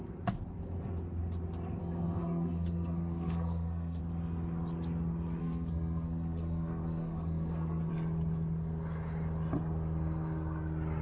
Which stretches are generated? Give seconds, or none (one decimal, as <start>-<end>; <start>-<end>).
1.8-4.0; 5.4-7.9